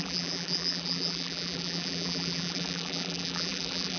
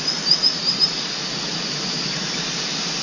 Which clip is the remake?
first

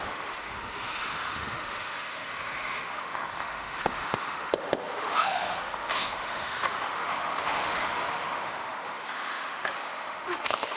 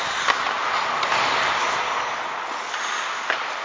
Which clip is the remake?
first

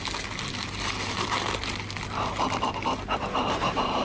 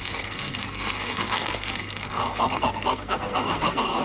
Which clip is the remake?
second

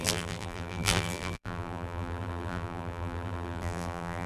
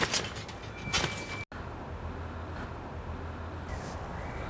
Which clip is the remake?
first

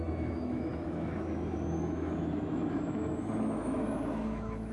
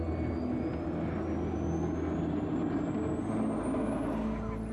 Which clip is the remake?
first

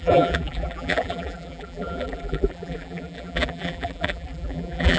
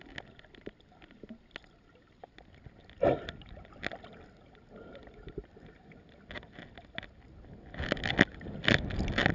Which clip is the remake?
first